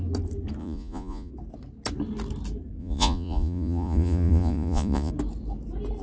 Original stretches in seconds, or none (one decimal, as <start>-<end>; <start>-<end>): 0.0-0.6; 1.3-2.8; 5.1-6.0